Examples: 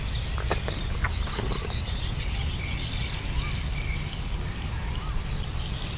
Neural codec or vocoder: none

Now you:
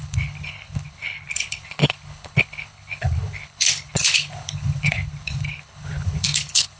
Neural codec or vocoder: codec, HILCodec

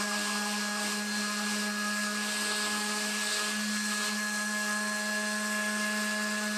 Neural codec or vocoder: none